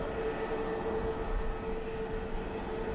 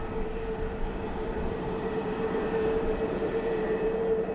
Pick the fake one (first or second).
second